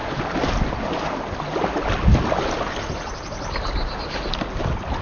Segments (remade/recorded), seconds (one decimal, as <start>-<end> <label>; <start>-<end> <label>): 0.0-5.0 recorded